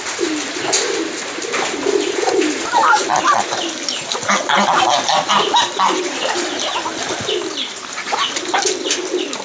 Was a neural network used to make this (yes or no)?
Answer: no